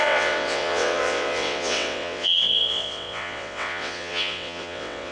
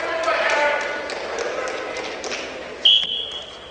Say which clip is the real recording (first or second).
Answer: second